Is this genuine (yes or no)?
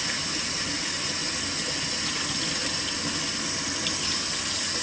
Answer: yes